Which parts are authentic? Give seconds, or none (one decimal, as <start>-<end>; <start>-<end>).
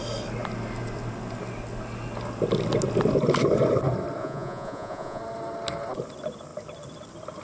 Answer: 0.0-4.2; 5.2-7.4